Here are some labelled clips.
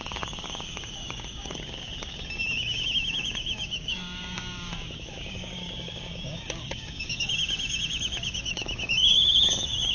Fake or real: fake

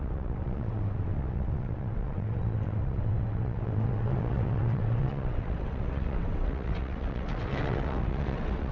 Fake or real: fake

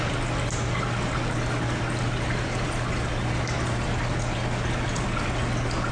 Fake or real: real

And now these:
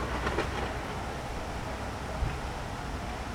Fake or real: real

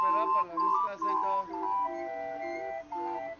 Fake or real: real